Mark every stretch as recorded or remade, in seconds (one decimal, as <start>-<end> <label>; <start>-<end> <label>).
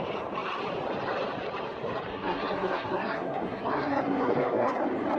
0.0-2.1 recorded; 2.1-4.8 remade; 4.8-5.2 recorded